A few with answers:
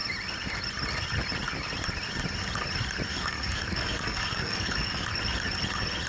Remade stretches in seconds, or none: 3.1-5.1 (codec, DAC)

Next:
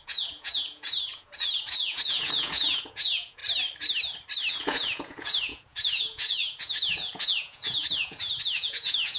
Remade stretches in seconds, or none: 0.0-3.4 (vocoder, Vocos); 4.5-9.2

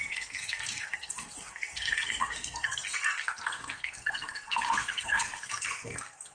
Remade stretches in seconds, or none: 0.0-6.3 (codec, SNAC)

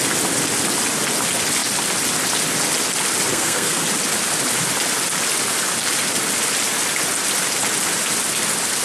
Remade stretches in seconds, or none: 3.3-3.8 (codec, SNAC)